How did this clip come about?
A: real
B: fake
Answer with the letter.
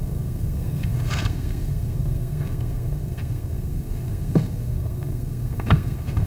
B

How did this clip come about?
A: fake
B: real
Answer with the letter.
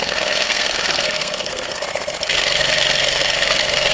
A